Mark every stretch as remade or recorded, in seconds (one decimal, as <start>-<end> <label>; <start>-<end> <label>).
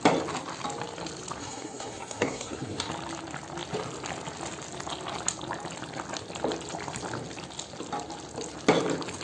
0.0-1.4 recorded; 1.4-2.9 remade; 2.9-9.2 recorded